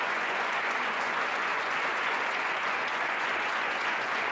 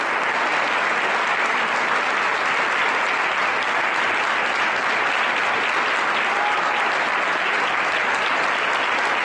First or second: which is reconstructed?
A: first